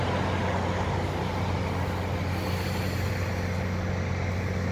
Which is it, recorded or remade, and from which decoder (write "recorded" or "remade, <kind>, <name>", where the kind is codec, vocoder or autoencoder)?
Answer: recorded